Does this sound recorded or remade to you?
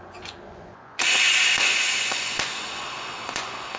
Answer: remade